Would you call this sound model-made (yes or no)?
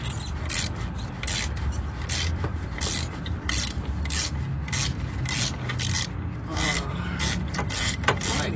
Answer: no